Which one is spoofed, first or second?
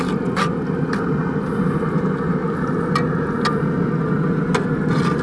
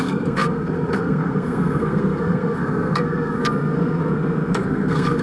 second